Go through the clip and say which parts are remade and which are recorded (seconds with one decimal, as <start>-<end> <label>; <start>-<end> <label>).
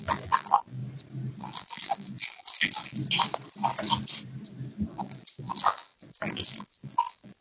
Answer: 0.0-0.8 remade; 0.8-1.4 recorded; 1.4-3.0 remade; 3.0-4.9 recorded; 4.9-7.4 remade